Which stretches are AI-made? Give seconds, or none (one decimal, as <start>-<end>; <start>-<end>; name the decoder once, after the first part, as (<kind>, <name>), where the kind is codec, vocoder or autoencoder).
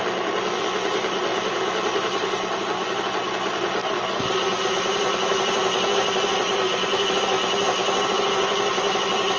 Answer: none